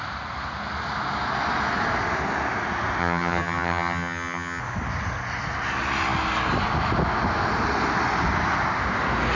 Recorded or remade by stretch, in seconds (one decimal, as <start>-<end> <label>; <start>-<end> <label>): 0.0-3.0 recorded; 3.0-4.6 remade; 4.6-9.4 recorded

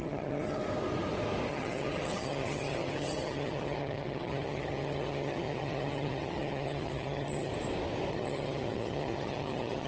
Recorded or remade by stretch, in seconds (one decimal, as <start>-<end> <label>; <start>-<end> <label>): 0.0-0.6 remade; 0.6-1.5 recorded; 1.5-7.5 remade; 7.5-8.1 recorded; 8.1-9.9 remade